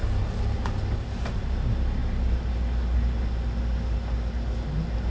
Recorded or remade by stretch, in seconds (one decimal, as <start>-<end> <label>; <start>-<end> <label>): 0.0-5.1 recorded